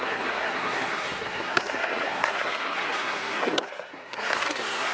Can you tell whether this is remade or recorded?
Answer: remade